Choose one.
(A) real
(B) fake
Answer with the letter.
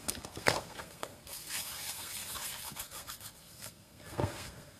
B